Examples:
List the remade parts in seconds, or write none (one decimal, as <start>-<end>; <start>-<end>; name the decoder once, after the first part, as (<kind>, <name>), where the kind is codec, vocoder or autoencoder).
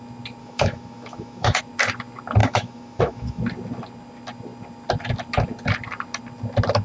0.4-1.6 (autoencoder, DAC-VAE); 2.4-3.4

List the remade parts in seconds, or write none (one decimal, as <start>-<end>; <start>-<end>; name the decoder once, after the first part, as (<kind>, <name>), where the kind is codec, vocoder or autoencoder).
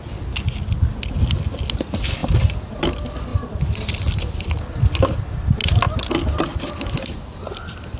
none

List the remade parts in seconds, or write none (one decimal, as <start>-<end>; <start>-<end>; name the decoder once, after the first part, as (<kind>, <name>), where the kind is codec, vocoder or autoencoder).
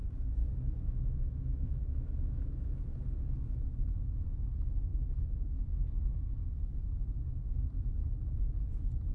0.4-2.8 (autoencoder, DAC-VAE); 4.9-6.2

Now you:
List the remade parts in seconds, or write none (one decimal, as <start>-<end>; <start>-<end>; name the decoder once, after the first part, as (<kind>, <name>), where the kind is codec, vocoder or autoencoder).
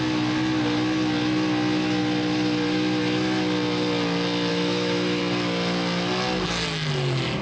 4.5-5.2 (autoencoder, DAC-VAE)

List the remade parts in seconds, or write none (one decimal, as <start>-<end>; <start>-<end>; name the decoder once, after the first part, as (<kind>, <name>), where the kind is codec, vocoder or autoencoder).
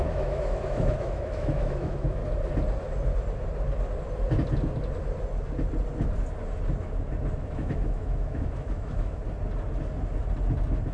0.0-2.2 (autoencoder, DAC-VAE); 7.4-9.2